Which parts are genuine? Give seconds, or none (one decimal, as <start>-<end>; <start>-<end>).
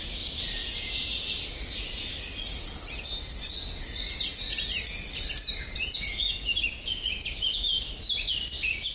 0.0-0.6; 1.5-5.8; 7.8-8.9